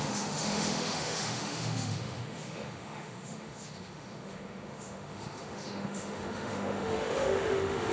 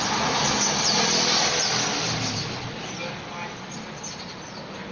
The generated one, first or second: first